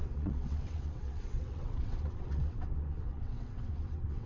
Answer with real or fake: fake